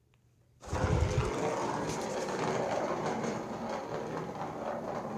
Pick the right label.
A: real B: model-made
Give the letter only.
A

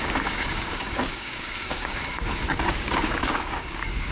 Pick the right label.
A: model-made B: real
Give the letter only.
A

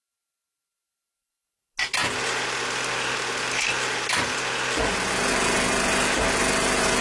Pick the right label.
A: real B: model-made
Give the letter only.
A